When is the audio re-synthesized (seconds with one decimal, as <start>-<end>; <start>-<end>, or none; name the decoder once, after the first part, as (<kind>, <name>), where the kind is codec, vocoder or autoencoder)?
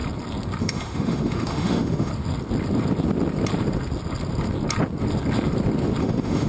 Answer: 0.6-2.1 (autoencoder, DAC-VAE); 6.0-6.5